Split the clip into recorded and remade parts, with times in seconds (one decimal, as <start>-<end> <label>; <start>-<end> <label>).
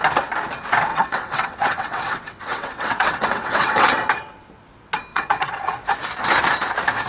0.0-0.9 recorded; 0.9-3.9 remade; 3.9-5.1 recorded; 5.1-5.7 remade; 5.7-7.1 recorded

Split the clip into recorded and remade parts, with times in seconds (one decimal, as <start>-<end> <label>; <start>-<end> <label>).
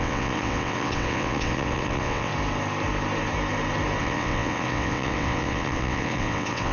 0.0-2.3 remade; 2.3-4.0 recorded; 4.0-6.7 remade